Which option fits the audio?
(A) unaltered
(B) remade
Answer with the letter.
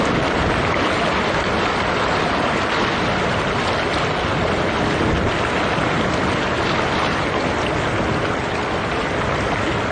A